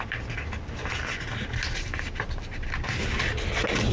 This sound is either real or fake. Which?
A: real